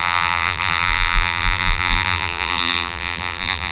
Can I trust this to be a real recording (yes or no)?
no